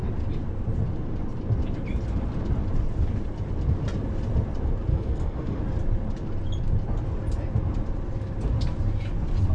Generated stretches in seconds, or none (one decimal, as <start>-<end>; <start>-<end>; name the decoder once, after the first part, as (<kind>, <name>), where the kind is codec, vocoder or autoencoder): 4.9-5.6 (codec, SNAC)